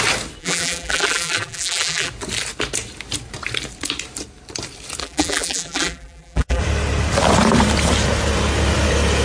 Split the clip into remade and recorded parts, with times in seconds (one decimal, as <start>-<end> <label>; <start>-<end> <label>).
0.0-0.4 recorded; 0.4-2.1 remade; 2.1-5.0 recorded; 5.0-6.6 remade; 6.6-9.2 recorded